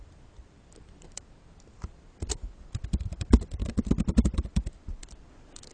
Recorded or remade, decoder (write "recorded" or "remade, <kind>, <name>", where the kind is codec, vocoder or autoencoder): remade, vocoder, BigVGAN v2